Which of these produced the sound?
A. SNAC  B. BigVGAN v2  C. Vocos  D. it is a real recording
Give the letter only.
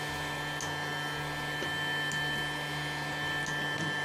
D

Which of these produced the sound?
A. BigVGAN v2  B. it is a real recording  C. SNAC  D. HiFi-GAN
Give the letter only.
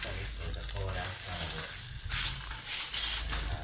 B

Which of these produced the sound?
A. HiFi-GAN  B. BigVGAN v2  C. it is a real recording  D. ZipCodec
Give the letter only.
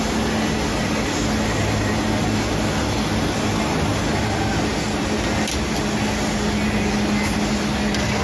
C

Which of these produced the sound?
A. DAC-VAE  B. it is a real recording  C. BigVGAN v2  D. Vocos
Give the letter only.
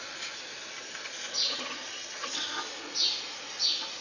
B